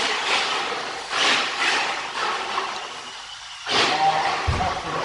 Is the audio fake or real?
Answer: real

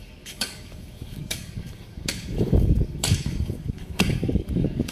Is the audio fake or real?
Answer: fake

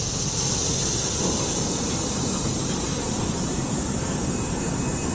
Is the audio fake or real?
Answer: real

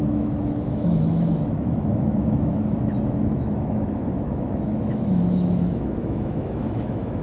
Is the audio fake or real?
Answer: fake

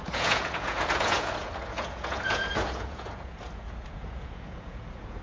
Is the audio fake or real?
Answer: fake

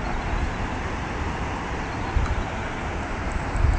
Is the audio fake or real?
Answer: real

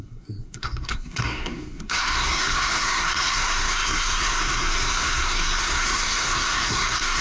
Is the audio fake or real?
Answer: fake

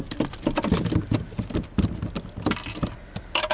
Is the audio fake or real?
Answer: real